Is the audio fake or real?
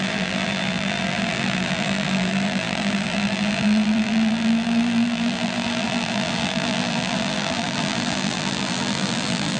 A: fake